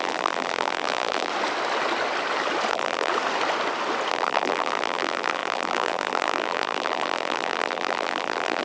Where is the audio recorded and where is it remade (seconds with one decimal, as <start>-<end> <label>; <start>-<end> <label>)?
0.0-1.3 remade; 1.3-2.7 recorded; 2.7-3.1 remade; 3.1-4.1 recorded; 4.1-8.6 remade